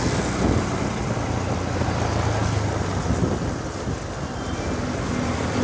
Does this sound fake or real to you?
real